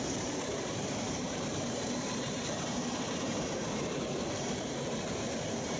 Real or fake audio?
fake